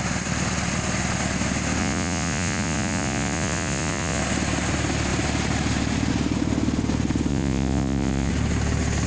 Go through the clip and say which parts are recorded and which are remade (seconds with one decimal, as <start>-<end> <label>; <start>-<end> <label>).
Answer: 0.0-1.8 recorded; 1.8-4.2 remade; 4.2-7.3 recorded; 7.3-8.3 remade; 8.3-9.1 recorded